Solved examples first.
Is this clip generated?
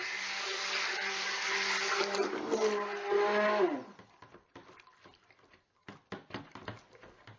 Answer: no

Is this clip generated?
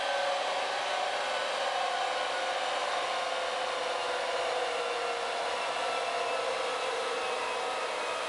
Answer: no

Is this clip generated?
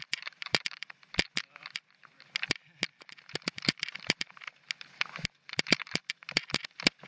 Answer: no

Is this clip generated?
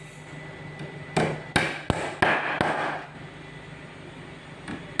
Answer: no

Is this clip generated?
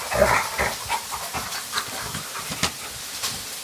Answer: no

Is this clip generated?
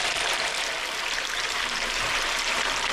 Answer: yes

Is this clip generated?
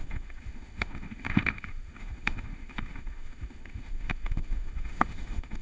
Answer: yes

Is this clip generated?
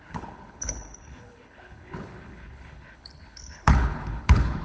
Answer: yes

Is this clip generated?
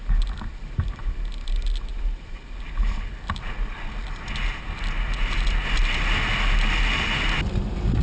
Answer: no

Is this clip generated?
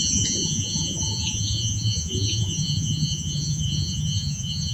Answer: yes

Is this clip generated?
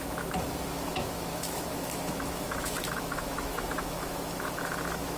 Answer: yes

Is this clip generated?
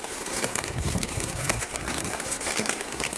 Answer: yes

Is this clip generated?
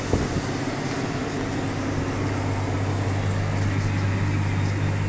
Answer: no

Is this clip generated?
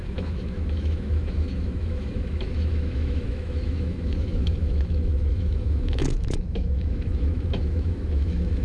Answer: yes